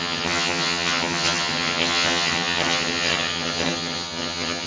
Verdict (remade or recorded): remade